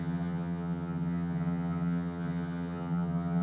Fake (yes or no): yes